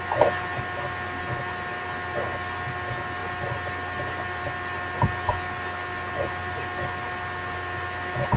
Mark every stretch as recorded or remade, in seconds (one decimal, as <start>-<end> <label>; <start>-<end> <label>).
0.0-8.4 recorded